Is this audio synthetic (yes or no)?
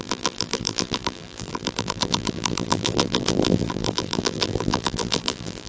yes